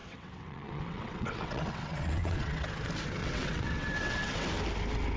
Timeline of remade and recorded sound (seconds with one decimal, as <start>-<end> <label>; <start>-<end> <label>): 0.0-2.7 remade; 2.7-3.2 recorded; 3.2-4.5 remade; 4.5-5.2 recorded

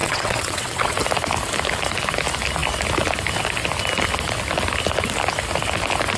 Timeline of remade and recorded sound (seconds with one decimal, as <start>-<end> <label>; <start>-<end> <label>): 0.0-1.0 remade; 1.0-6.2 recorded